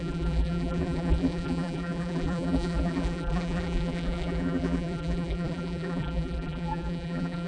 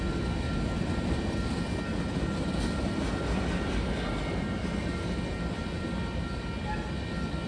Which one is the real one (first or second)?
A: second